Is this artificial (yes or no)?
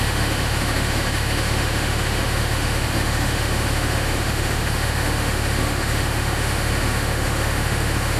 yes